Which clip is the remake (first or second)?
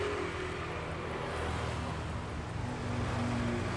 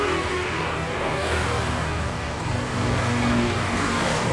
second